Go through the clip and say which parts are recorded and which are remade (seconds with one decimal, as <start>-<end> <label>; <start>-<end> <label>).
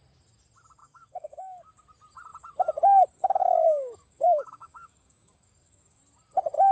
0.0-0.8 recorded; 0.8-1.7 remade; 1.7-3.4 recorded; 3.4-6.0 remade; 6.0-6.7 recorded